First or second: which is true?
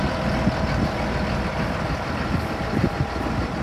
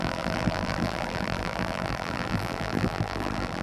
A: first